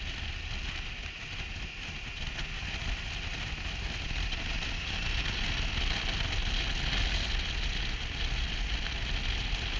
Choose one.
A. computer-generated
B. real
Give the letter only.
B